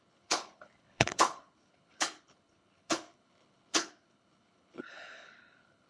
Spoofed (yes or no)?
yes